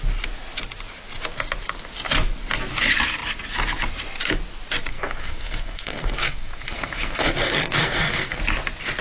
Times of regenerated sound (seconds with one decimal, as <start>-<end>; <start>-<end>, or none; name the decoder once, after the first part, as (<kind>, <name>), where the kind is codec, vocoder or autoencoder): 4.9-8.4 (codec, SNAC)